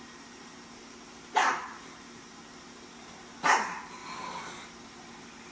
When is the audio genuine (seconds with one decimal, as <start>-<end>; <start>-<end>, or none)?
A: 4.0-5.5